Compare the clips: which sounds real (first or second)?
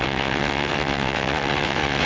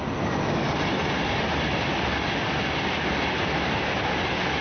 second